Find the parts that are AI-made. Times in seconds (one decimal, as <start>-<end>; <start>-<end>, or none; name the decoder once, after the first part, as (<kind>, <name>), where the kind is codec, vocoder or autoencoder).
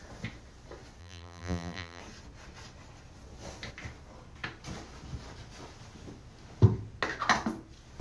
1.0-2.0 (vocoder, BigVGAN v2)